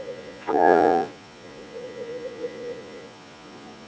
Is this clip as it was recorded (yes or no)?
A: no